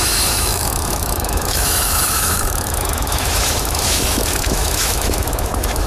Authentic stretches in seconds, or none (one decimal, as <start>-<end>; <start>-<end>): none